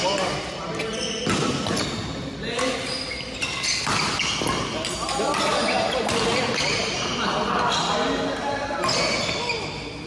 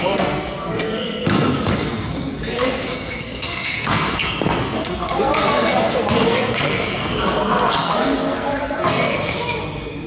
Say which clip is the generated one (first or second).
second